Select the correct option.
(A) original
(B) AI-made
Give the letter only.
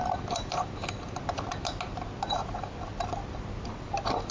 A